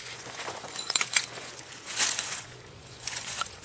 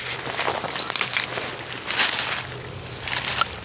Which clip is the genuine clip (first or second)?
second